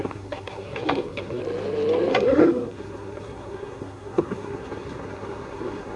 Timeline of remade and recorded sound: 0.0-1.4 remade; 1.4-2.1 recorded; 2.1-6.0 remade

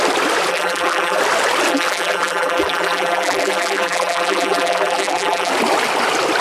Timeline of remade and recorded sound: 0.0-0.5 recorded; 0.5-1.2 remade; 1.2-1.7 recorded; 1.7-5.5 remade; 5.5-6.4 recorded

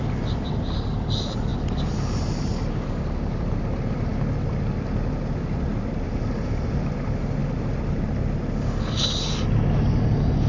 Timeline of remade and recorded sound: 0.0-10.5 recorded

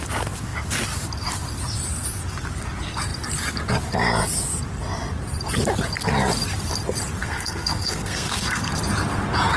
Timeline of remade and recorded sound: 0.0-7.2 recorded; 7.2-8.7 remade; 8.7-9.6 recorded

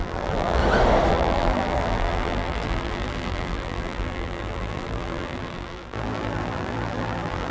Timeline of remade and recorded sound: 0.0-0.6 remade; 0.6-1.1 recorded; 1.1-7.5 remade